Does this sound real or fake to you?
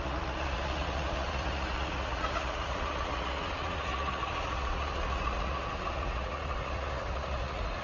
fake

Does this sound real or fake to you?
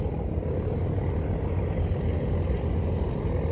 real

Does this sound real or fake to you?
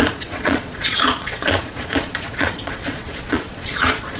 fake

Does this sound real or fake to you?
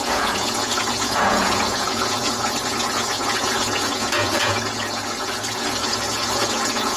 fake